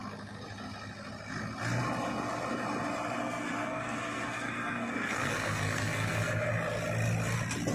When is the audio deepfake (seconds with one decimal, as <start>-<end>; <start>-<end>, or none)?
3.2-6.5